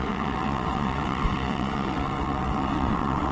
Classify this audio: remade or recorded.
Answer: remade